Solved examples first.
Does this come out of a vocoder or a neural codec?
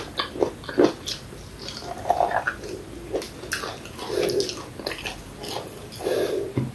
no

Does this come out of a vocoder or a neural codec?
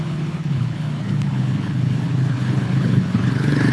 yes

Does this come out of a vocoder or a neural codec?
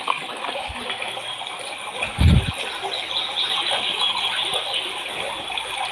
no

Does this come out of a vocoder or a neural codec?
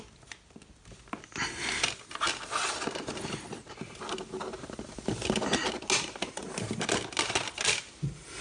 no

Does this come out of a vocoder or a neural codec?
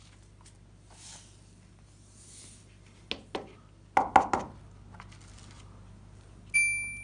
no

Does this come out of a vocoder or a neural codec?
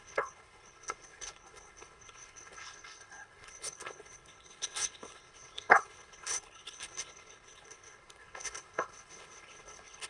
yes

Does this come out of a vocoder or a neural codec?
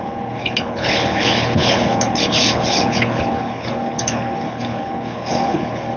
yes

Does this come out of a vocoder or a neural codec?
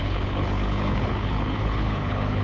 yes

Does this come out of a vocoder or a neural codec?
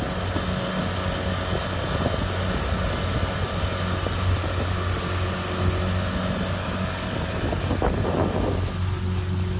no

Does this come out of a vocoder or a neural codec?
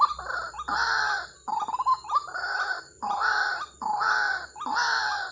no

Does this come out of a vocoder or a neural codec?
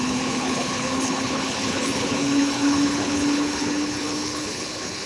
yes